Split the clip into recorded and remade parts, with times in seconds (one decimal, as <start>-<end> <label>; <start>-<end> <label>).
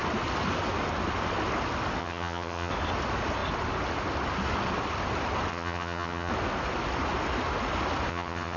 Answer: 0.0-2.0 recorded; 2.0-2.7 remade; 2.7-5.5 recorded; 5.5-6.3 remade; 6.3-8.1 recorded; 8.1-8.6 remade